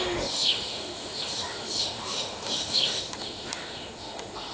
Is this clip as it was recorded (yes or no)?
no